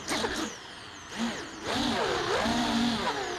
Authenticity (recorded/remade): recorded